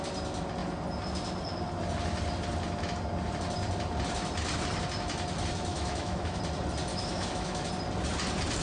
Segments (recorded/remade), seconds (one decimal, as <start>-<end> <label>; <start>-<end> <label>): 0.0-5.7 recorded; 5.7-6.4 remade; 6.4-6.9 recorded; 6.9-7.7 remade; 7.7-8.6 recorded